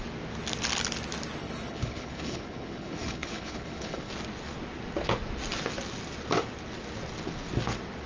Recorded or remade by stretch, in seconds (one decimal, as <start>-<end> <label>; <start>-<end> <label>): 0.0-1.4 recorded; 1.4-4.1 remade; 4.1-8.1 recorded